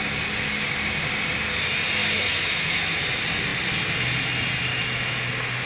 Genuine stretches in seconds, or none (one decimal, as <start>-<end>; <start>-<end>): 0.0-2.0; 3.0-4.7; 5.3-5.7